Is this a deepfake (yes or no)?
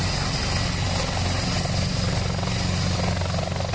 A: no